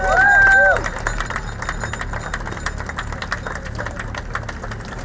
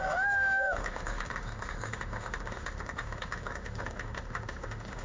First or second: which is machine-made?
second